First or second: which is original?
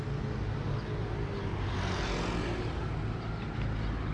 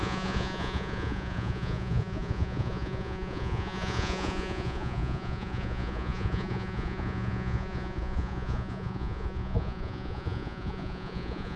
first